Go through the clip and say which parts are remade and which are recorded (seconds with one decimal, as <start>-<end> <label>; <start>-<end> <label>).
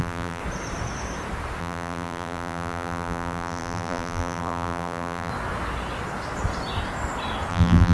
0.0-0.4 remade; 0.4-1.6 recorded; 1.6-5.3 remade; 5.3-7.5 recorded; 7.5-7.9 remade